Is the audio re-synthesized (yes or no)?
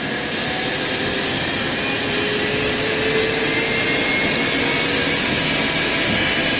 no